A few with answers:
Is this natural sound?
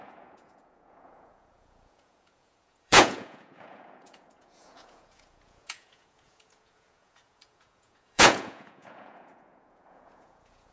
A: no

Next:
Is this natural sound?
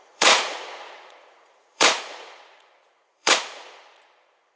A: no